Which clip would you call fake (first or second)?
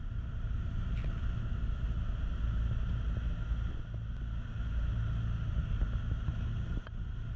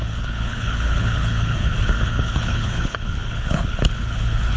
second